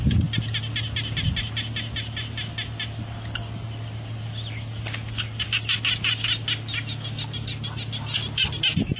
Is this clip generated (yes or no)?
no